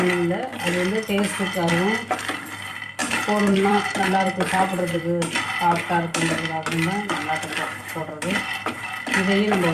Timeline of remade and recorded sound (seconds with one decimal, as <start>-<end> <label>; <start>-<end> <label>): 0.0-3.0 recorded; 3.0-5.0 remade; 5.0-7.2 recorded; 7.2-8.0 remade; 8.0-9.7 recorded